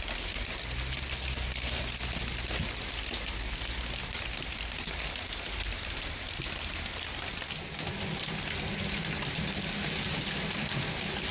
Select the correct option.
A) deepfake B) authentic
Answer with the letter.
B